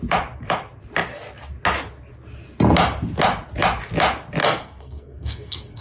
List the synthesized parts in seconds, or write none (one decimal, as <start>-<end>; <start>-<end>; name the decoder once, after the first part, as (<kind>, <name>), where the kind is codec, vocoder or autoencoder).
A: 4.4-5.8 (codec, SNAC)